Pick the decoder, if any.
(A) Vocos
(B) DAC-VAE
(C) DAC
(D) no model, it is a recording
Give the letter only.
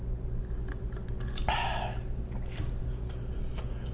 D